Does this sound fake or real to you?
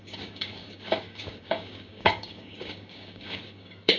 fake